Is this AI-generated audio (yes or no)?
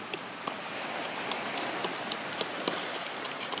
no